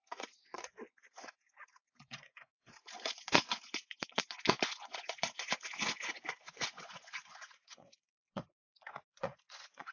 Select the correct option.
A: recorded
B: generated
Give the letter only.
B